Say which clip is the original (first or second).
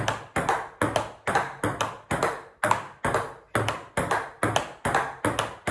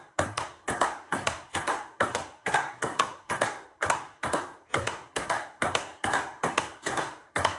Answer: first